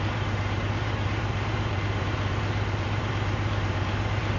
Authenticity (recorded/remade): remade